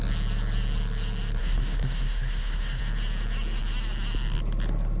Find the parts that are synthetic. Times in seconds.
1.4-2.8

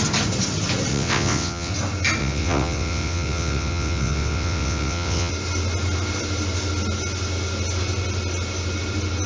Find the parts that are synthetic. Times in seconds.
0.9-1.7; 2.2-5.3

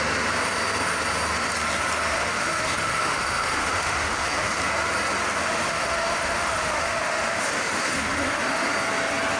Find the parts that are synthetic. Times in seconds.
2.1-4.6; 5.4-8.7

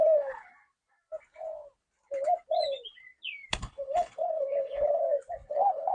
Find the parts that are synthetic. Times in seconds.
0.0-0.5; 3.6-5.0; 5.5-5.9

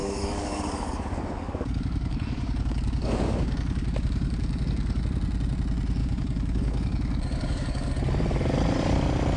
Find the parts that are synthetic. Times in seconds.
0.0-5.0; 6.0-7.9

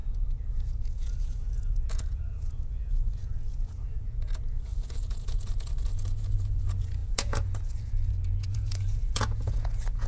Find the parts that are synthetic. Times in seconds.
0.0-10.1